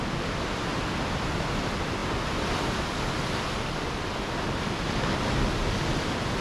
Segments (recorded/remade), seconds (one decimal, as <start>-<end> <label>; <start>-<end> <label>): 0.0-6.4 recorded

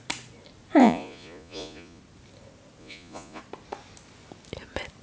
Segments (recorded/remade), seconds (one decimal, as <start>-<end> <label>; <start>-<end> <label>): 0.0-0.8 recorded; 0.8-2.0 remade; 2.0-2.8 recorded; 2.8-3.4 remade; 3.4-5.0 recorded

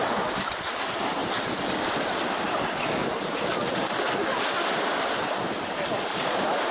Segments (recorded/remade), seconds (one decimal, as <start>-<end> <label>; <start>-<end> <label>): 0.0-6.7 recorded

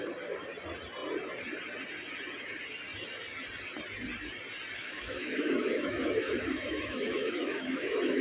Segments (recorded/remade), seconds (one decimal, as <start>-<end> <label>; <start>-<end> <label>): 0.0-4.8 recorded; 4.8-8.2 remade

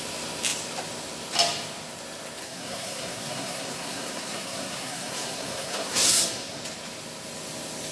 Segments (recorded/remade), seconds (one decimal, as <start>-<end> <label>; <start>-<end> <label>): 0.0-2.4 recorded; 2.4-6.6 remade; 6.6-7.9 recorded

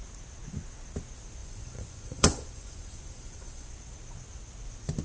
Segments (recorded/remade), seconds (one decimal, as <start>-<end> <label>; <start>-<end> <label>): 0.0-1.4 recorded; 1.4-3.7 remade; 3.7-5.0 recorded